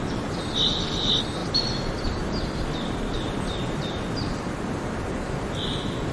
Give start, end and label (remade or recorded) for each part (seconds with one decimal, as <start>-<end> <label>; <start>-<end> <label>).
0.0-6.1 recorded